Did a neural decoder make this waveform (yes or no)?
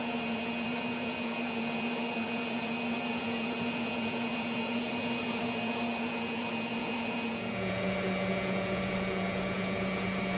yes